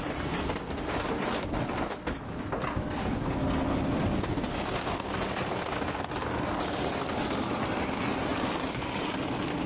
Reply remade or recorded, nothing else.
recorded